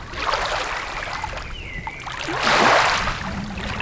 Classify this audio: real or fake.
real